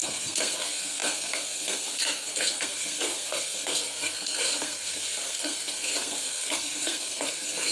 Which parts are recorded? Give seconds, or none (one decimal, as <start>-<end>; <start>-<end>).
none